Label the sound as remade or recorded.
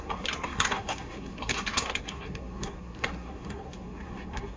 remade